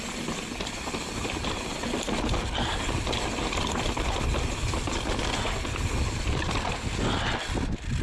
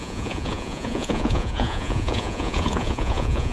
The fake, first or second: second